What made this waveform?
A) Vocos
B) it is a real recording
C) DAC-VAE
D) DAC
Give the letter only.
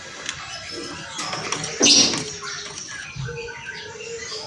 B